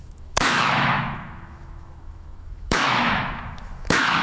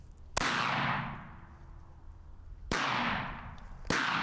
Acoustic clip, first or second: second